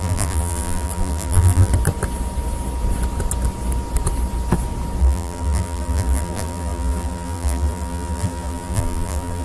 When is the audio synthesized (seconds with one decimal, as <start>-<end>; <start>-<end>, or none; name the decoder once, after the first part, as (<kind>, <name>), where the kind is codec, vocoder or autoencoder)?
0.0-1.7 (vocoder, BigVGAN v2); 5.0-9.4